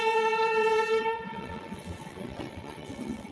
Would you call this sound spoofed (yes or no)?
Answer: yes